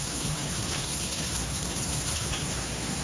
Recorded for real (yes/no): no